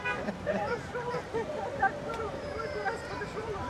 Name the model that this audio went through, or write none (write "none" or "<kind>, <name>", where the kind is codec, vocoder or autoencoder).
vocoder, BigVGAN v2